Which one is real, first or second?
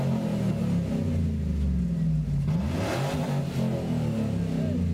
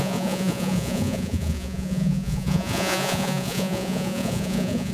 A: first